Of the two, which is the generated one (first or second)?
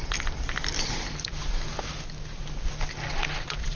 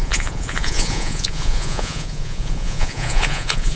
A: second